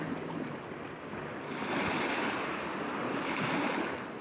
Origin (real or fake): real